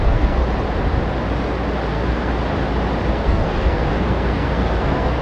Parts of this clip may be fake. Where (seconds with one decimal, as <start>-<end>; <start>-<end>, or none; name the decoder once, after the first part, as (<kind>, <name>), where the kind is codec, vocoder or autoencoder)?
0.0-0.4 (codec, SNAC); 1.9-2.3; 3.1-5.2